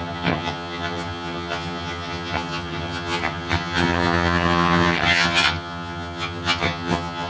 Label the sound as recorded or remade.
remade